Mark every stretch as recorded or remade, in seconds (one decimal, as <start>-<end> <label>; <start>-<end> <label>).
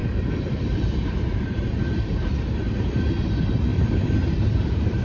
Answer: 0.0-3.0 remade; 3.0-3.7 recorded; 3.7-5.0 remade